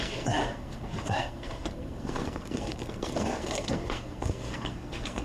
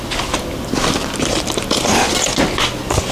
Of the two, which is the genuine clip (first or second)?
second